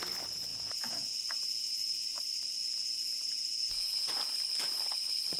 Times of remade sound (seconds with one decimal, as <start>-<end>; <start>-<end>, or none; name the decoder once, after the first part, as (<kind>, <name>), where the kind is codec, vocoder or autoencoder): 0.5-2.2 (vocoder, Vocos); 2.6-4.1